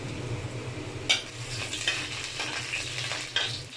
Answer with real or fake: real